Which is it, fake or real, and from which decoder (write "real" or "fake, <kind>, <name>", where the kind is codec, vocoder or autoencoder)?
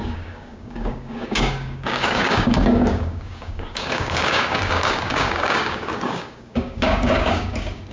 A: fake, codec, DAC